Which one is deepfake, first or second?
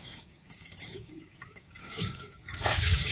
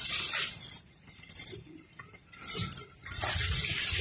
first